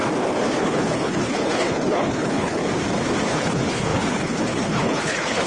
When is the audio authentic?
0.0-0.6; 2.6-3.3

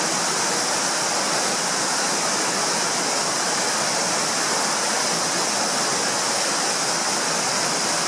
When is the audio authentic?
0.0-8.1

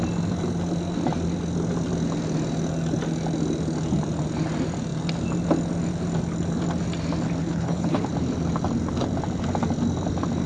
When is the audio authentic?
0.0-7.4; 8.1-10.5

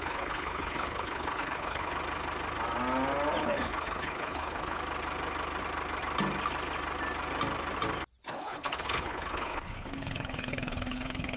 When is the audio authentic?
1.9-3.4; 4.8-8.3

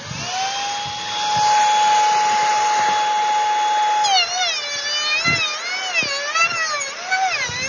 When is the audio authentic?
0.0-7.7

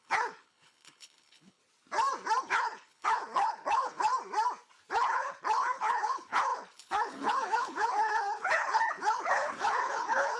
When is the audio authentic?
1.6-2.4; 4.1-4.9

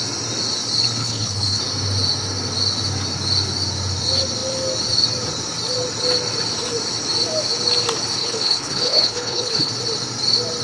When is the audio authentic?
0.0-1.0; 1.6-8.2; 9.7-10.6

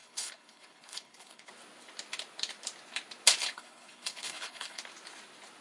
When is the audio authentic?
1.5-3.4; 4.8-5.6